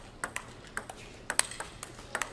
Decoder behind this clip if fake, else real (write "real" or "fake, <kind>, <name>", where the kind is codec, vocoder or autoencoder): real